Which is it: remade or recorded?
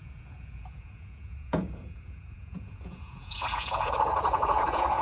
remade